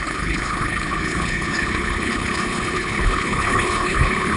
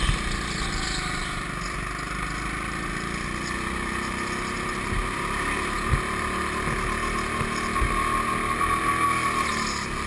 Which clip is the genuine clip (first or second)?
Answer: second